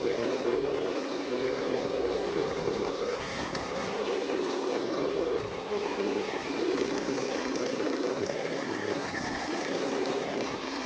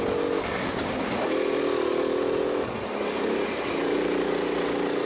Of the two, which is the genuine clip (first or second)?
second